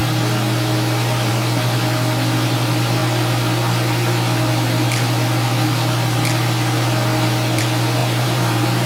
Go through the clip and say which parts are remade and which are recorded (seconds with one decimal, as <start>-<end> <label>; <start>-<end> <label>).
0.0-8.0 recorded; 8.0-8.9 remade